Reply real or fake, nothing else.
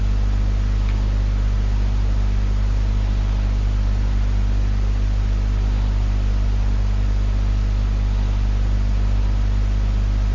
real